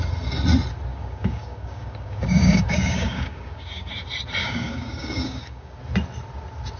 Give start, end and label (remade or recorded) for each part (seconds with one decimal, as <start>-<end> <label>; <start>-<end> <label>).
0.0-0.9 recorded; 0.9-3.9 remade; 3.9-4.4 recorded; 4.4-5.8 remade; 5.8-6.8 recorded